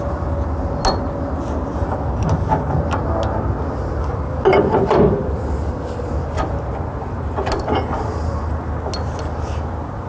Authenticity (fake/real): real